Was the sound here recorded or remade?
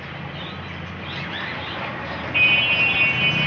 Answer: recorded